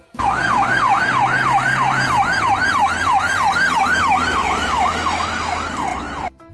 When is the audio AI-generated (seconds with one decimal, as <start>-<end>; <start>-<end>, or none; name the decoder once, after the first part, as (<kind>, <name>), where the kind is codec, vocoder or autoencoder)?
4.4-4.9 (vocoder, BigVGAN v2)